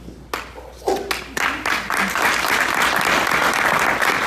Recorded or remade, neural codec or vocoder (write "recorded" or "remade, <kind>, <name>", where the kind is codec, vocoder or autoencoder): recorded